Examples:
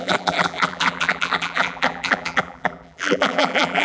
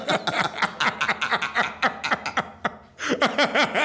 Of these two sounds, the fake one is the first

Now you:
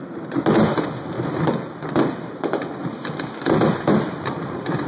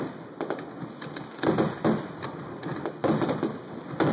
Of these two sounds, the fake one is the first